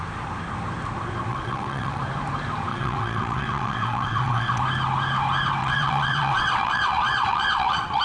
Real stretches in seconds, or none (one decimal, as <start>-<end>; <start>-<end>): 0.0-1.3; 2.0-2.7; 4.6-5.6